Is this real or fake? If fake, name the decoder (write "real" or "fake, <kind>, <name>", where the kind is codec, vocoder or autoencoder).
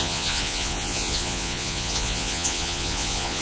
fake, vocoder, Vocos